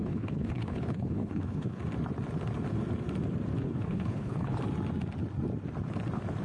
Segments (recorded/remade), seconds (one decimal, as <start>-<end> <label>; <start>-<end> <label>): 0.0-1.8 remade; 1.8-3.6 recorded; 3.6-4.6 remade; 4.6-6.4 recorded